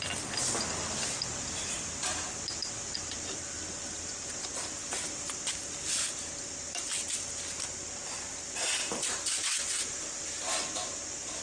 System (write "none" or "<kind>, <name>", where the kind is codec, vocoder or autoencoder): none